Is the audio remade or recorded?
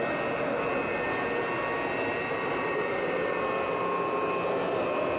recorded